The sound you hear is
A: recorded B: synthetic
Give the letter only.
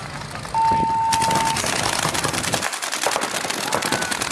A